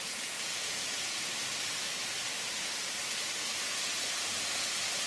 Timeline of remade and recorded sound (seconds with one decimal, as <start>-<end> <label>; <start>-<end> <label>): 0.0-1.3 remade; 1.3-3.6 recorded; 3.6-5.1 remade